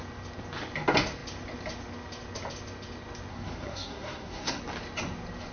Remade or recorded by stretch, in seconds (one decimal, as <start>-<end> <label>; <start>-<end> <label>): 0.0-3.3 recorded; 3.3-4.6 remade; 4.6-5.5 recorded